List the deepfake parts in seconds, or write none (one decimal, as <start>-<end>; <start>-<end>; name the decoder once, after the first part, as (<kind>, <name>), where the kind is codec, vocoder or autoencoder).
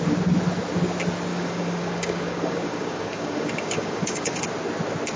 1.3-4.4 (codec, DAC)